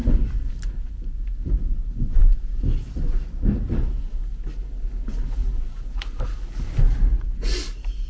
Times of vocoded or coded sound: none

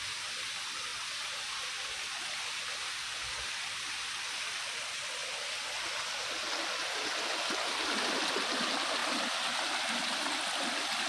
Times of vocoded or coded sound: none

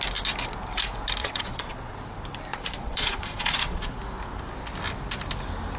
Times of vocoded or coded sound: 1.2-1.9 (vocoder, Vocos); 2.5-4.0

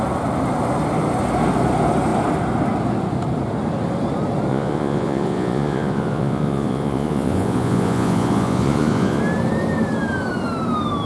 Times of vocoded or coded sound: 4.5-9.2 (vocoder, Vocos)

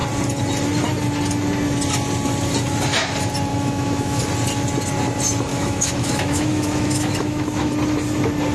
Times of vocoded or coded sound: 3.5-4.2 (autoencoder, DAC-VAE); 5.5-7.7

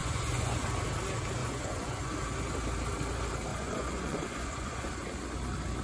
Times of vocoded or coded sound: 0.0-0.6 (vocoder, Vocos); 1.4-2.1; 3.5-4.9

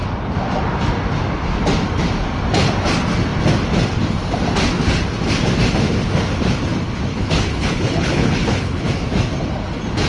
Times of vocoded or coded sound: 7.1-8.8 (codec, HILCodec)

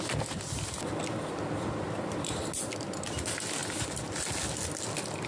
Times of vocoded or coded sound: 3.6-4.2 (vocoder, BigVGAN v2)